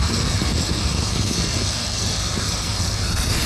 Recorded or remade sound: remade